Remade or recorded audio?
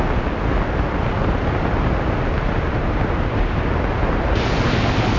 recorded